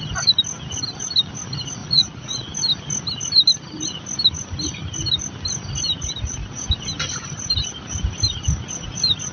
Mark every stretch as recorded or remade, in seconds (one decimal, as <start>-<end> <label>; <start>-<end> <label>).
0.0-1.8 recorded; 1.8-2.5 remade; 2.5-9.3 recorded